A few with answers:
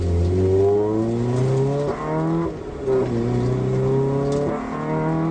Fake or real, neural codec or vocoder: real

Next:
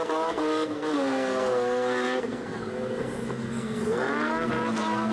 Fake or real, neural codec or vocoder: fake, codec, SNAC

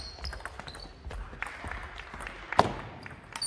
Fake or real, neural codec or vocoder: real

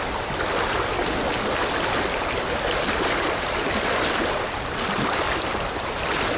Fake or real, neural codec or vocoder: real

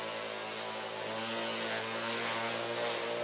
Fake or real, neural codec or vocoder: real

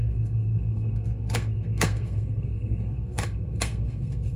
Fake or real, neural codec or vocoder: fake, codec, SNAC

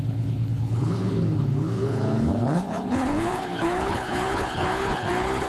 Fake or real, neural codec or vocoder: fake, codec, HILCodec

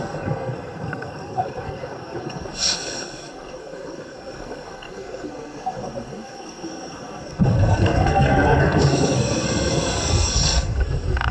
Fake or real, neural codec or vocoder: fake, codec, SNAC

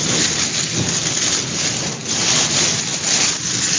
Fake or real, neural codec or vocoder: real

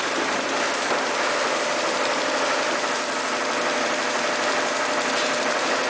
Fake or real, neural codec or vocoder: real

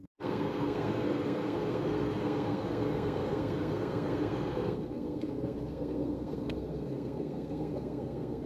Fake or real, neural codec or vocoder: fake, codec, SNAC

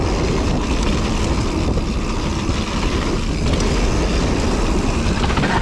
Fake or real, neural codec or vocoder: real